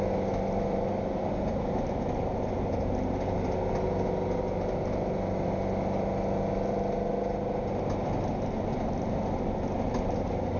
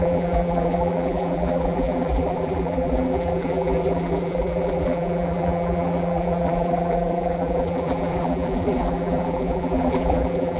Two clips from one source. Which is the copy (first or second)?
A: second